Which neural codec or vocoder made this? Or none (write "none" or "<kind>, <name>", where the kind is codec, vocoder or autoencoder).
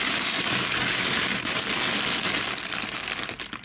none